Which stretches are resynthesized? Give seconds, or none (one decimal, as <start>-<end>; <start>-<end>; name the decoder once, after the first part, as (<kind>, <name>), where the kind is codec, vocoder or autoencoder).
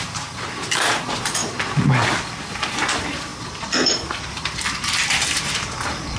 0.0-1.4 (vocoder, BigVGAN v2); 2.4-3.3; 4.1-6.2